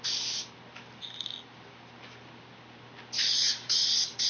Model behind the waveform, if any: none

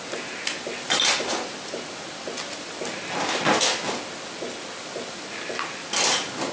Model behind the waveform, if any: none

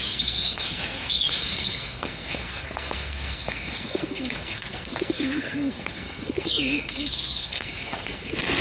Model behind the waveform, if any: codec, SNAC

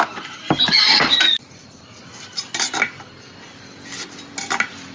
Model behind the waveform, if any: none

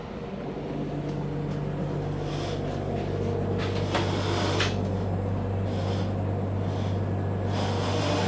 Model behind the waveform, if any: none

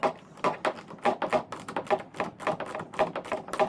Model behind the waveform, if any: none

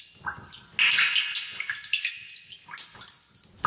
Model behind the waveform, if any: none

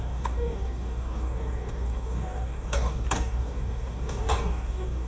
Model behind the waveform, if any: codec, DAC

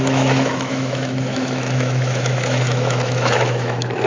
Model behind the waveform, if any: autoencoder, DAC-VAE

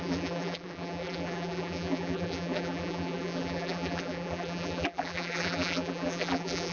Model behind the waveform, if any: vocoder, BigVGAN v2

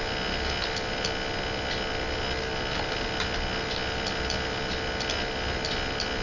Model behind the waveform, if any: none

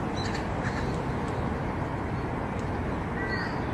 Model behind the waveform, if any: none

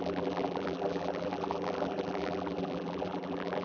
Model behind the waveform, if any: vocoder, BigVGAN v2